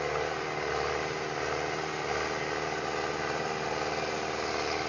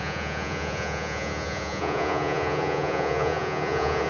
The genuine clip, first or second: first